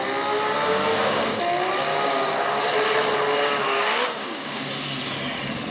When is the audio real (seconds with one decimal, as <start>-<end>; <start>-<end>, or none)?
0.0-0.9; 1.4-1.9; 2.6-3.3; 4.7-5.7